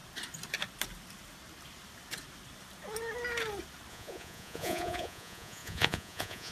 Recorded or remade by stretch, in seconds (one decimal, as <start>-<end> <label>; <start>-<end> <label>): 0.0-3.9 recorded; 3.9-6.5 remade